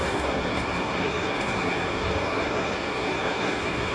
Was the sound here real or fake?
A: fake